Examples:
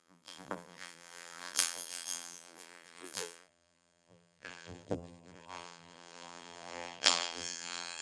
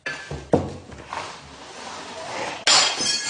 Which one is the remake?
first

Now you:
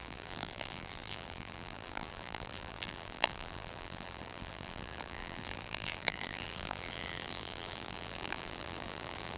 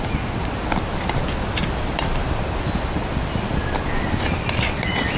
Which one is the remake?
first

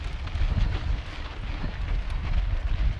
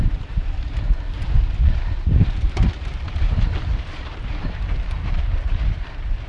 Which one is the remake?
second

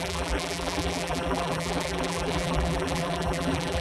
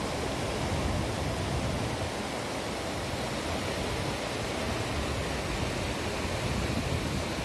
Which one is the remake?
first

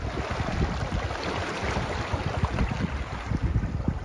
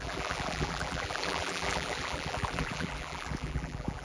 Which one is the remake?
second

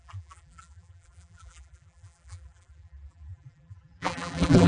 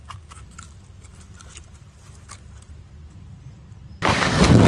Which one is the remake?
first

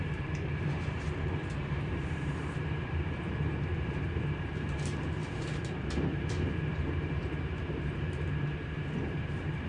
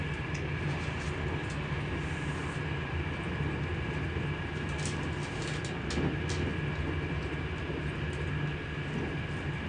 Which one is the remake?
first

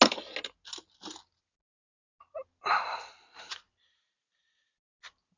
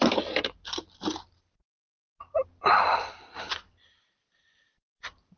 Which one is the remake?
second